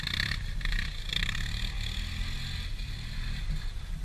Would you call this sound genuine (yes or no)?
yes